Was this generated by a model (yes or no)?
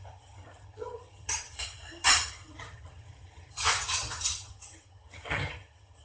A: yes